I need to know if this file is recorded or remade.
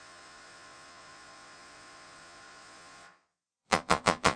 remade